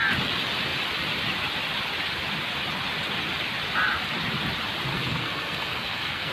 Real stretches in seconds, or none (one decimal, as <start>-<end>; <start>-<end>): 0.0-4.9